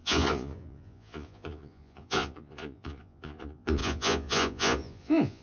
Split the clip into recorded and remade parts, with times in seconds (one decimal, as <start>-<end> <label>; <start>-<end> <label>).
0.0-5.4 remade